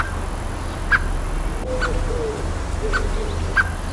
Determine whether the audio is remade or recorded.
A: recorded